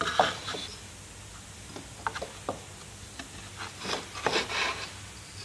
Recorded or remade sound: recorded